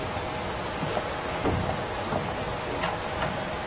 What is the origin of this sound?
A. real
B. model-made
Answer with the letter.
A